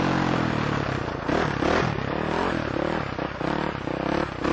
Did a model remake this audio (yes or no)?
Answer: no